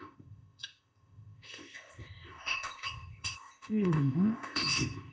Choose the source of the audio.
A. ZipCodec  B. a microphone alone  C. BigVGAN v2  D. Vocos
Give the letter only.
A